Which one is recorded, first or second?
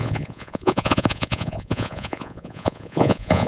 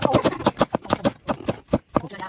second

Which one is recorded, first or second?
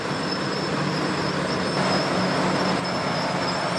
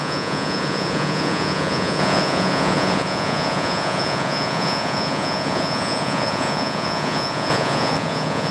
first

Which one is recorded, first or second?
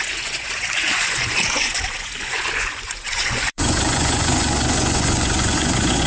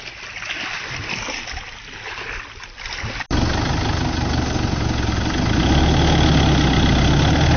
second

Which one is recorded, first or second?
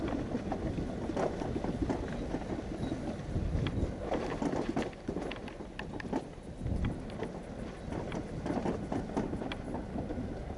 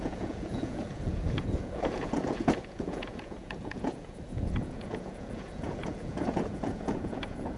first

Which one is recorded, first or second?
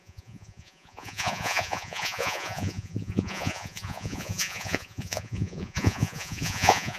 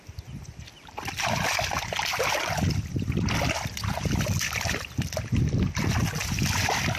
second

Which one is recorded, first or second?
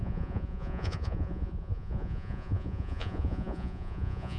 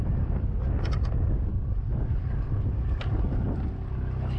second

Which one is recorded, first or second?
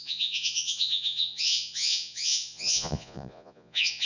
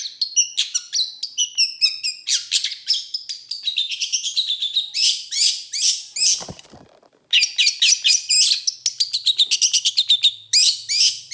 second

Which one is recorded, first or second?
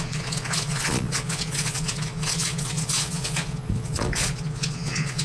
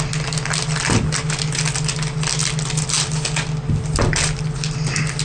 second